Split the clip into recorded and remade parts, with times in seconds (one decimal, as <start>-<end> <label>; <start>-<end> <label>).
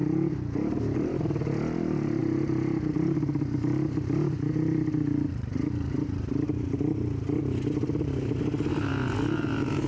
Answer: 0.0-0.8 recorded; 0.8-8.9 remade; 8.9-9.9 recorded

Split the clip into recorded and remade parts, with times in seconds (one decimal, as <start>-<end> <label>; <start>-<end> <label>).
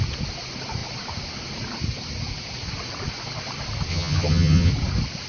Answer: 0.0-3.9 recorded; 3.9-4.7 remade; 4.7-5.3 recorded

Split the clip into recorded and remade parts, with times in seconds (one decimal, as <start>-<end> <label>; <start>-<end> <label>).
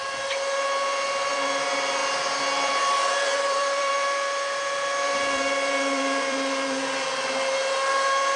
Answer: 0.0-2.0 remade; 2.0-2.8 recorded; 2.8-8.4 remade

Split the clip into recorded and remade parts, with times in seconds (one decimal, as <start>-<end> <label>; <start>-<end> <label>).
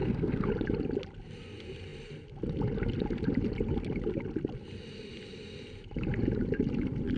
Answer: 0.0-0.5 remade; 0.5-7.2 recorded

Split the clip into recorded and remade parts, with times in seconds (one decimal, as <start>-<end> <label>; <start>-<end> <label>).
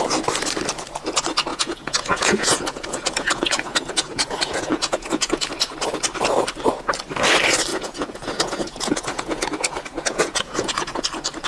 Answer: 0.0-1.5 recorded; 1.5-5.5 remade; 5.5-7.7 recorded; 7.7-11.0 remade; 11.0-11.5 recorded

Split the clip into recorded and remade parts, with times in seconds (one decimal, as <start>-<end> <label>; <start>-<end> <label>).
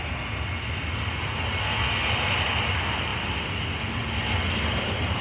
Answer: 0.0-5.2 recorded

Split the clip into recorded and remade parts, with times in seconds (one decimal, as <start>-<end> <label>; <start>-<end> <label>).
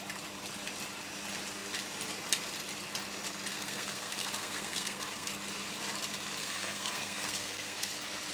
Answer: 0.0-3.5 recorded; 3.5-5.3 remade; 5.3-6.4 recorded; 6.4-7.9 remade; 7.9-8.3 recorded